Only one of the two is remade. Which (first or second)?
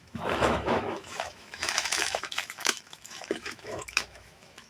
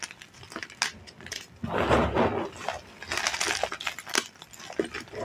first